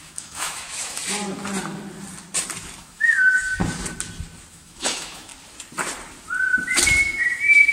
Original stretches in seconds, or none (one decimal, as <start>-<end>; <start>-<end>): 1.0-2.8; 3.6-4.5; 5.3-7.0